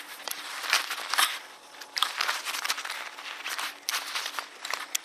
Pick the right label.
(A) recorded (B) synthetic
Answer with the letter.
B